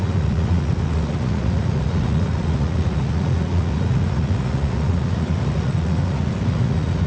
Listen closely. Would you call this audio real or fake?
fake